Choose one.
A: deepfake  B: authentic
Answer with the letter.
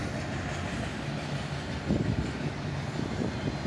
B